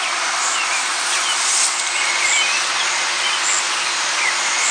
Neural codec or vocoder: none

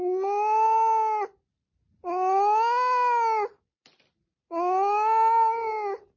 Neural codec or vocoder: none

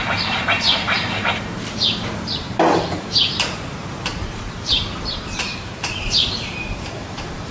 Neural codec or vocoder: vocoder, BigVGAN v2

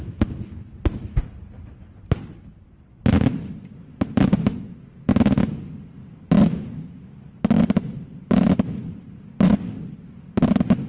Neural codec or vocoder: none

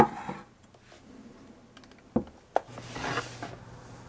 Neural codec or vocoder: none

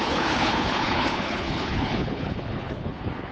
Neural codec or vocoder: codec, HILCodec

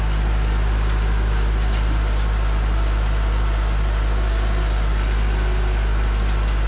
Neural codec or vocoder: none